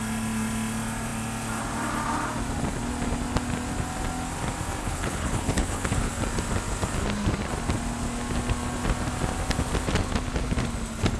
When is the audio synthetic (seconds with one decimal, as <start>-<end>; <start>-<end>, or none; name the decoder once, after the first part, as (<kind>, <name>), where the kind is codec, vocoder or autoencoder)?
4.8-6.1 (codec, HILCodec)